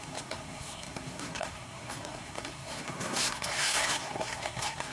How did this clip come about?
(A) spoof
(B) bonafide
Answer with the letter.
A